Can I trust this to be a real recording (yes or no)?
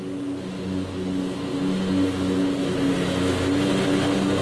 yes